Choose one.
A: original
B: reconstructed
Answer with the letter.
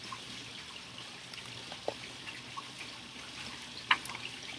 A